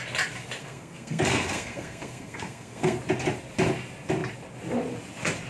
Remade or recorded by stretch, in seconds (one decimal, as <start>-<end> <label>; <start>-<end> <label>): 0.0-0.6 recorded; 0.6-3.0 remade; 3.0-5.5 recorded